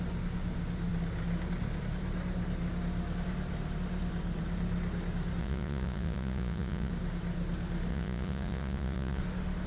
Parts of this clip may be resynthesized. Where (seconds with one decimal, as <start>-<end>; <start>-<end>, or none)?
5.4-6.9; 7.9-9.2